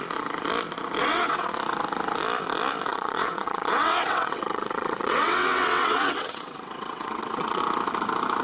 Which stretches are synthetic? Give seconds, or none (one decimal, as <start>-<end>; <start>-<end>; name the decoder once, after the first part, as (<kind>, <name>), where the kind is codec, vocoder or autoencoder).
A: 1.0-1.5 (vocoder, WaveNeXt); 2.9-7.6